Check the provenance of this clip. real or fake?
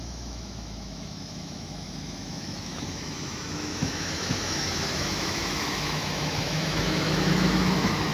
fake